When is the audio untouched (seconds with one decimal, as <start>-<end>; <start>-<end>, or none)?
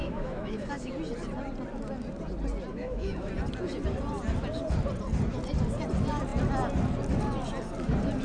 0.9-2.7; 3.3-8.2